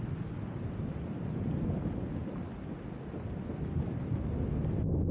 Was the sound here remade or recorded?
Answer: recorded